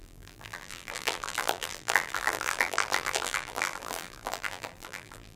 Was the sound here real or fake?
fake